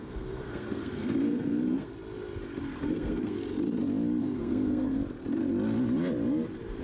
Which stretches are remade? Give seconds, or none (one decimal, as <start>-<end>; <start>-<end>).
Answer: 0.0-1.9; 2.8-3.4; 4.2-5.0